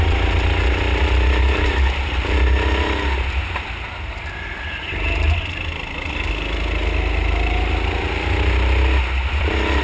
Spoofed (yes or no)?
no